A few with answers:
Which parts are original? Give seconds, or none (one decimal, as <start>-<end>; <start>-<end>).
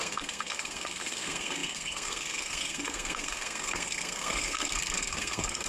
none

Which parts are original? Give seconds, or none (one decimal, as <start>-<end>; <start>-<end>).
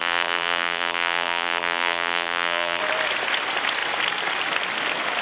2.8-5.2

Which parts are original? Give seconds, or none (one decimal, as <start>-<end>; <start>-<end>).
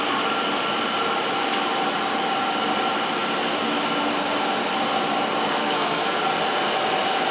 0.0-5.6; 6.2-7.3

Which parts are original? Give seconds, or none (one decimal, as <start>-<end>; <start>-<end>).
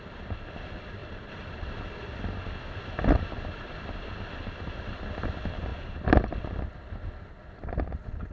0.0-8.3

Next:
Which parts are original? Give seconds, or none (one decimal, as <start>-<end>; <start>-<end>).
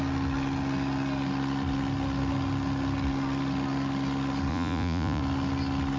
0.0-4.5; 5.2-6.0